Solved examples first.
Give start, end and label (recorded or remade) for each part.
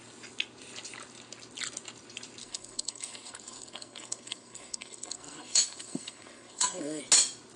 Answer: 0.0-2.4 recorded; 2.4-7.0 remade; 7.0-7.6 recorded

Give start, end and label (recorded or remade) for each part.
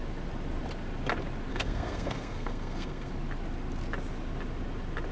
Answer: 0.0-1.5 recorded; 1.5-3.1 remade; 3.1-5.1 recorded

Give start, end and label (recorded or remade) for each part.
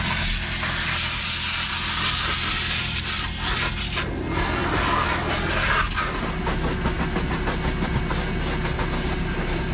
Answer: 0.0-9.7 recorded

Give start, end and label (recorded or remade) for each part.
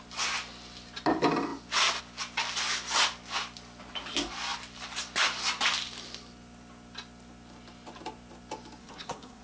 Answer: 0.0-8.8 recorded; 8.8-9.4 remade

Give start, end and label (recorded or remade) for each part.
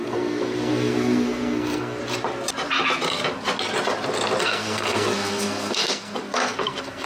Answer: 0.0-2.0 remade; 2.0-4.4 recorded; 4.4-7.1 remade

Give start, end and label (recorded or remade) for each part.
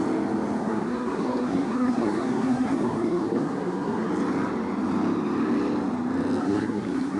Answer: 0.0-0.6 recorded; 0.6-4.1 remade; 4.1-6.4 recorded; 6.4-7.2 remade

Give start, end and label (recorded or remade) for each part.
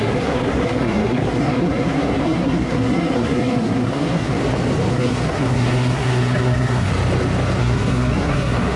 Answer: 0.0-4.4 remade; 4.4-4.9 recorded; 4.9-6.9 remade; 6.9-7.6 recorded; 7.6-8.8 remade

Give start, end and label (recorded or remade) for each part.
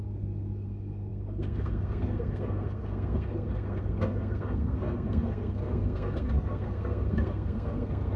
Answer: 0.0-8.2 remade